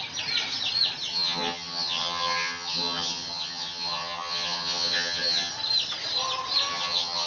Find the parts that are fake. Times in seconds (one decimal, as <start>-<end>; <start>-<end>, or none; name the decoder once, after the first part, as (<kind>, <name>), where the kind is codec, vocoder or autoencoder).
1.1-5.5 (vocoder, HiFi-GAN); 6.7-7.3